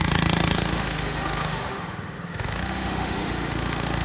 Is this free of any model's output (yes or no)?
no